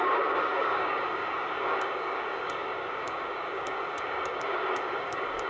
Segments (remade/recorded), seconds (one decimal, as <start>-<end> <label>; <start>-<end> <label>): 0.0-5.5 remade